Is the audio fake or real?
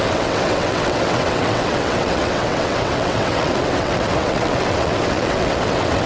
fake